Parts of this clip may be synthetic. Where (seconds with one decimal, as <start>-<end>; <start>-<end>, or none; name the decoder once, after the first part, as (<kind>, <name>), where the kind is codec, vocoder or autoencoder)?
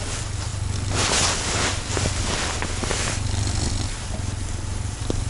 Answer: none